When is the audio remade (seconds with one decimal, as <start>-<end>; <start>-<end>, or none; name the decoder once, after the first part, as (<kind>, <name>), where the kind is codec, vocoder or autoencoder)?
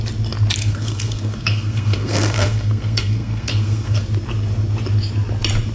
0.6-4.0 (codec, SNAC)